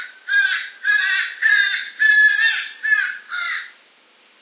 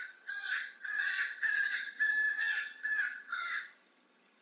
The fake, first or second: second